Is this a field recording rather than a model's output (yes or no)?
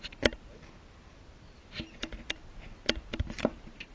yes